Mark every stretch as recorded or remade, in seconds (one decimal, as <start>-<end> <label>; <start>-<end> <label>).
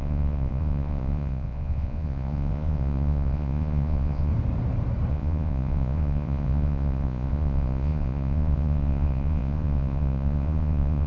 0.0-4.3 remade; 4.3-5.1 recorded; 5.1-11.1 remade